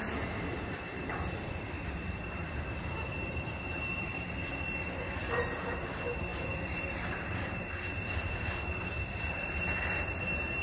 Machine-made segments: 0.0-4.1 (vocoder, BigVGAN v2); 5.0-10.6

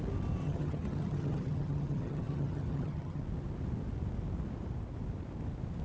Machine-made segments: 0.4-3.2 (vocoder, HiFi-GAN)

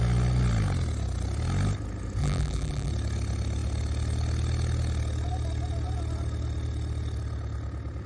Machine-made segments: 2.2-2.9 (vocoder, BigVGAN v2)

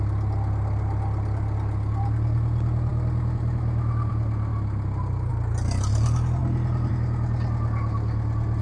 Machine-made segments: none

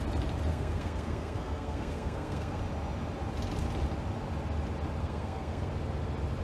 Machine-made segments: 0.5-2.6 (codec, SNAC); 5.0-5.7

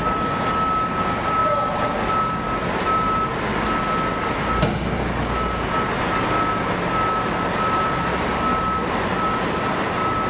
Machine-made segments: none